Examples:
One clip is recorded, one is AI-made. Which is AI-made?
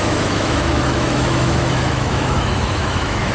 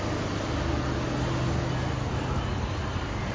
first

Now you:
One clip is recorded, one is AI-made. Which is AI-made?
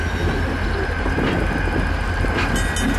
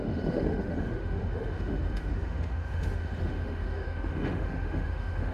second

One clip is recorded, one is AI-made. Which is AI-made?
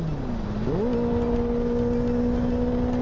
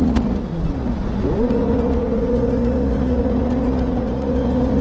second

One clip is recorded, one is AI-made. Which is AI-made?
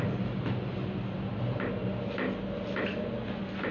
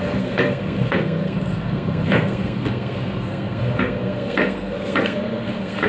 second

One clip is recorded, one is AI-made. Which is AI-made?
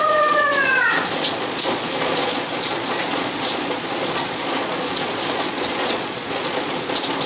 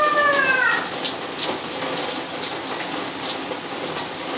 first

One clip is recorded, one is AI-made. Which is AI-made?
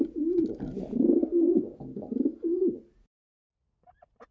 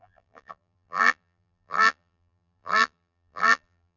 second